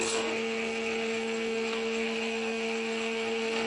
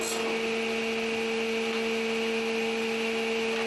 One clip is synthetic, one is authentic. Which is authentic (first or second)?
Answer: second